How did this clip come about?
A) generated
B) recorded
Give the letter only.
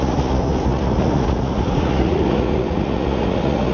A